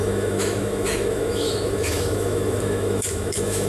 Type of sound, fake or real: fake